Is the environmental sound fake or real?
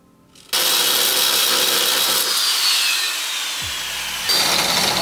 real